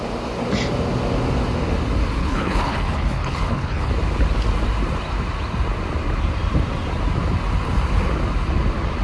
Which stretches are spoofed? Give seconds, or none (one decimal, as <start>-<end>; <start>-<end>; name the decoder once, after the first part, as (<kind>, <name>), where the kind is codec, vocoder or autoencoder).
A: 2.2-3.9 (codec, HILCodec)